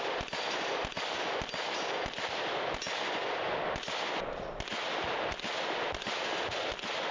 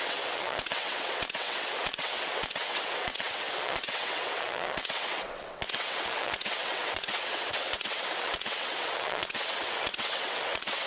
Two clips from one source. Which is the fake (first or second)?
second